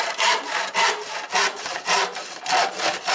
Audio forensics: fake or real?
real